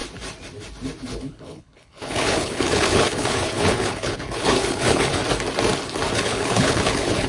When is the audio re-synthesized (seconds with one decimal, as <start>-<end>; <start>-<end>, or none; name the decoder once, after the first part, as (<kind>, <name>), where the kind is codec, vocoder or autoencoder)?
1.0-5.2 (codec, HILCodec); 6.2-7.3